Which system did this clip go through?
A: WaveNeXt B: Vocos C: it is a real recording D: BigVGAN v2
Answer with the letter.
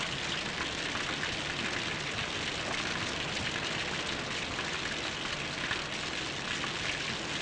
C